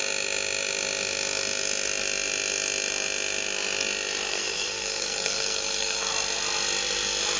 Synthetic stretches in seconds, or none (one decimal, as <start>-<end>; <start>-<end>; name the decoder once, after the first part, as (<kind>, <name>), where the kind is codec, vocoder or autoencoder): 4.3-6.1 (codec, SNAC)